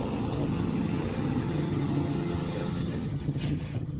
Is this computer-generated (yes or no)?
yes